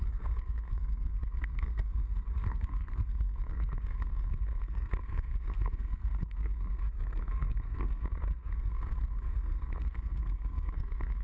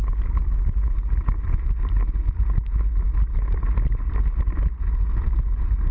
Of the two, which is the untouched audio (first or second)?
second